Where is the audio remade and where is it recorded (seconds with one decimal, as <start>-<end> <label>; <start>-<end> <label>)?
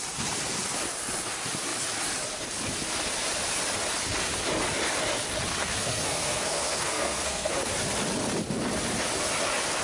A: 0.0-5.5 recorded; 5.5-7.5 remade; 7.5-9.8 recorded